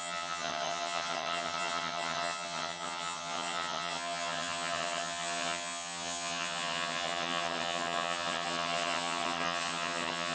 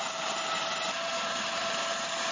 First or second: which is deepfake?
first